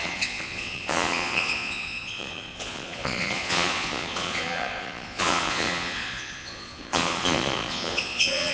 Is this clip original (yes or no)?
no